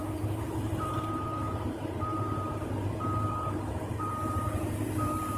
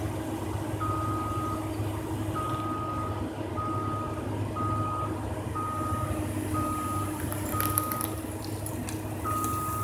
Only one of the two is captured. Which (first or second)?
second